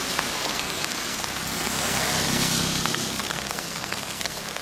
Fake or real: fake